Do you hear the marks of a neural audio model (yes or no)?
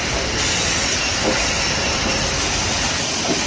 no